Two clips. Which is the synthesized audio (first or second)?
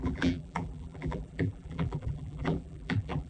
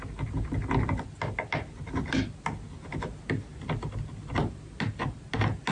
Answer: first